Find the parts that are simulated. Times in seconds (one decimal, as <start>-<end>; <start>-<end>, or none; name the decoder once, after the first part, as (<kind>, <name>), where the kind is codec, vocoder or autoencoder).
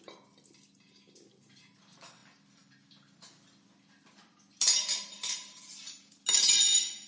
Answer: none